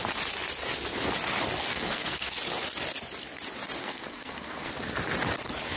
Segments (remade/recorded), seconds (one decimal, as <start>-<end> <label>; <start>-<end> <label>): 0.0-1.7 recorded; 1.7-2.4 remade; 2.4-3.8 recorded; 3.8-4.7 remade; 4.7-5.8 recorded